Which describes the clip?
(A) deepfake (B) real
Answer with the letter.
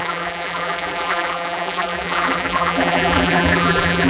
A